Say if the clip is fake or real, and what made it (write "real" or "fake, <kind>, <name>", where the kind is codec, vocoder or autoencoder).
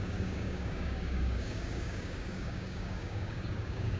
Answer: fake, codec, DAC